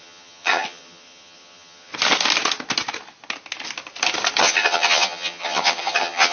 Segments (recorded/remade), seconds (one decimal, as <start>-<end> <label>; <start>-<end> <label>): 0.0-1.9 remade; 1.9-4.4 recorded; 4.4-6.3 remade